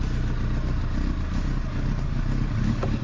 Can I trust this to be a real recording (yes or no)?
yes